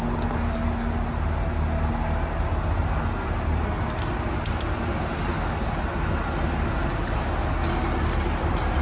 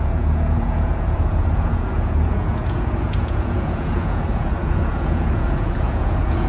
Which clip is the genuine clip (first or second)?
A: first